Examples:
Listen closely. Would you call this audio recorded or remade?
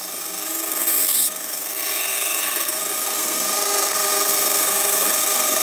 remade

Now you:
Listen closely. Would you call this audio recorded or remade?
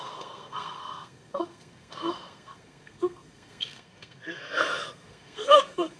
remade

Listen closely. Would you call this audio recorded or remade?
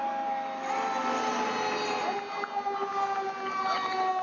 recorded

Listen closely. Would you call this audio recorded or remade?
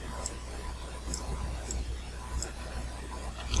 recorded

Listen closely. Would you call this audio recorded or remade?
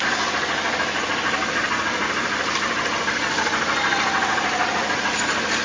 recorded